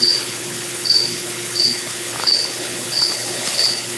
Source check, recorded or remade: remade